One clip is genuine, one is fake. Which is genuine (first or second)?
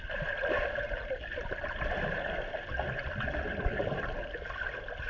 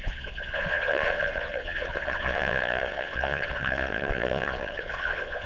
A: first